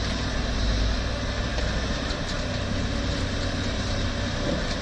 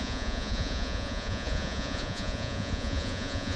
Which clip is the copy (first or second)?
second